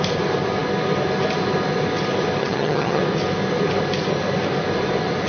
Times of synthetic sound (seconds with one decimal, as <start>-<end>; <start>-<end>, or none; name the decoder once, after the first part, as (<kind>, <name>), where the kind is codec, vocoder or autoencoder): 2.4-3.0 (vocoder, HiFi-GAN)